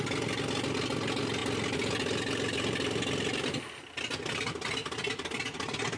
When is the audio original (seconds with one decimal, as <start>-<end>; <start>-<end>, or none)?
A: 0.0-6.0

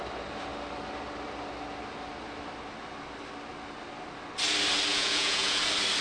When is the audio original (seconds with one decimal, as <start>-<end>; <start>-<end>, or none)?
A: 0.0-4.9; 5.6-6.0

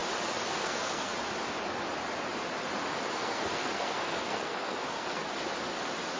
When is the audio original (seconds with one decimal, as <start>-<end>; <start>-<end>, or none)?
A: 0.0-0.5; 1.1-3.1; 5.2-6.2